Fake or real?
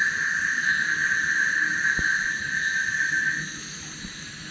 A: real